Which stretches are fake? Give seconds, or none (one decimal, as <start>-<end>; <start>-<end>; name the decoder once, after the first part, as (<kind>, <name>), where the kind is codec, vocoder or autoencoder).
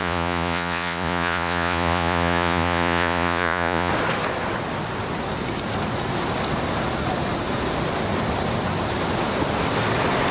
0.0-3.9 (vocoder, Vocos)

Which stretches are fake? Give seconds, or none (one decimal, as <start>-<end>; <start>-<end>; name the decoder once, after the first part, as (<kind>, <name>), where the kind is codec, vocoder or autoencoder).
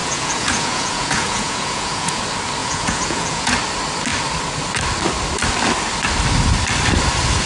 0.0-2.2 (vocoder, Vocos); 2.6-3.5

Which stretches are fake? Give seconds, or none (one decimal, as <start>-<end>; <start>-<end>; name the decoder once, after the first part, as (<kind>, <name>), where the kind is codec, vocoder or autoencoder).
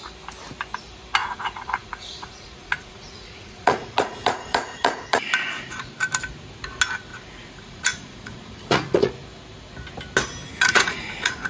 1.2-5.9 (vocoder, Vocos); 7.1-9.1; 10.5-11.5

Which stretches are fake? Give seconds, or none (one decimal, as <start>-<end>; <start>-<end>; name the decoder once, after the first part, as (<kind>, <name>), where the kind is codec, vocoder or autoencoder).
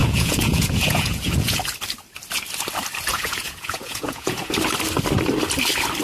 0.0-1.6 (vocoder, Vocos); 3.1-4.5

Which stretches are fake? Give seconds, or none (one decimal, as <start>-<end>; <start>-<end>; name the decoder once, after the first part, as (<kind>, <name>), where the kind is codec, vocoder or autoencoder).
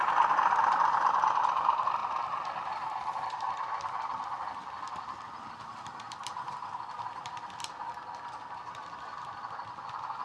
none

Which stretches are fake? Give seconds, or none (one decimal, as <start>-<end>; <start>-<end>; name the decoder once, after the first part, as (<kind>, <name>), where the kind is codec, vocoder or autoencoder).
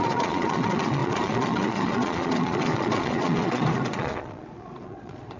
0.0-5.4 (vocoder, Vocos)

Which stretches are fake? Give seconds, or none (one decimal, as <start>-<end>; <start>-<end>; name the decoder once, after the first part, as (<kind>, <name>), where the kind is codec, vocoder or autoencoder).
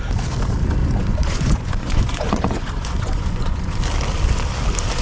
0.8-3.8 (vocoder, Vocos)